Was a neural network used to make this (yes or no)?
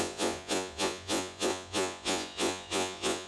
yes